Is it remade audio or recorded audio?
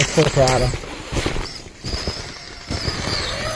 remade